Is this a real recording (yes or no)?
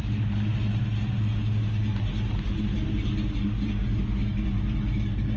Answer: yes